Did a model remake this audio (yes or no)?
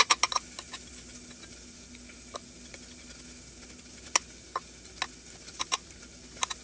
no